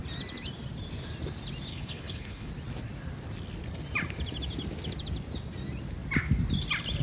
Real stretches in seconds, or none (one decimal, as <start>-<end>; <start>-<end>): 0.0-1.7; 2.5-7.0